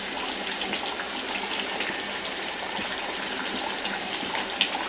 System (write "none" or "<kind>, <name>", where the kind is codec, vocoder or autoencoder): none